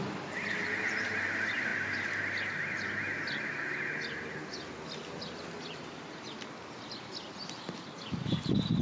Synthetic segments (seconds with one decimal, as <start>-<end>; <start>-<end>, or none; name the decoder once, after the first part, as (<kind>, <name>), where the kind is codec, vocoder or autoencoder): none